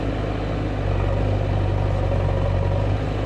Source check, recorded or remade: recorded